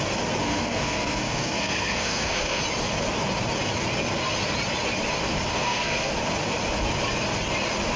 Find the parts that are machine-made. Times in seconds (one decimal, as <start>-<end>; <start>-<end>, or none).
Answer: 0.4-2.6; 5.5-6.1